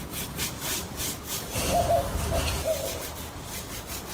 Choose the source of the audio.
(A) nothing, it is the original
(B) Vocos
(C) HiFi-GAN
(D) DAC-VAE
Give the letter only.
A